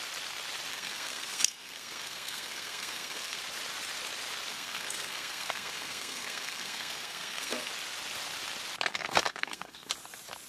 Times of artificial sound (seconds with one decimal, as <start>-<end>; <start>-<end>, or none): 0.7-3.4; 4.5-7.7; 8.9-9.9